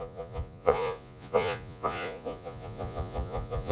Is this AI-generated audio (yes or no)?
yes